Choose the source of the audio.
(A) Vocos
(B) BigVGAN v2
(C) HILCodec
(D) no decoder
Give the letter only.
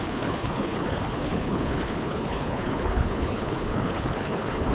C